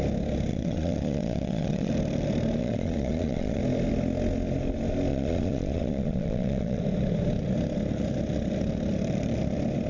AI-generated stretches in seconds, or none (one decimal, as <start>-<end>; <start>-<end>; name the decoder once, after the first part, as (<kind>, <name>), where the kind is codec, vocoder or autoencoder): 0.5-1.9 (vocoder, Vocos); 2.6-3.6; 5.1-6.8